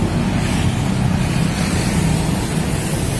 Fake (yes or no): no